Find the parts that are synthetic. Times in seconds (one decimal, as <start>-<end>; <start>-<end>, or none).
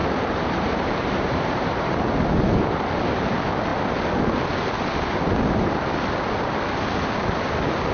0.0-2.3